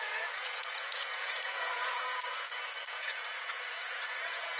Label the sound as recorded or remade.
remade